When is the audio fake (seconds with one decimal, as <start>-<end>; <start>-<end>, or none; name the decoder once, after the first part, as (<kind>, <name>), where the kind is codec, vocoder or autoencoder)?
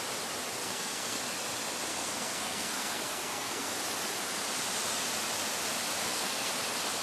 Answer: 0.6-1.2 (codec, SNAC); 1.9-3.7; 6.0-6.5